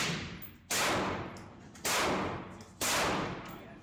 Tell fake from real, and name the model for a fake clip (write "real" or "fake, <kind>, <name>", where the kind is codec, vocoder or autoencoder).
real